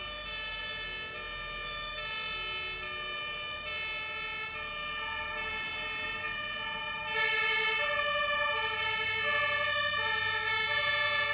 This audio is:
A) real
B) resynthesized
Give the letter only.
A